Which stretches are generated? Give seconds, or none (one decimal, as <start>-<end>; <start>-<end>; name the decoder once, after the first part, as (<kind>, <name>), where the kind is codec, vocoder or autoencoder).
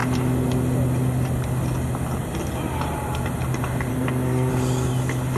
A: 3.9-4.5 (codec, SNAC)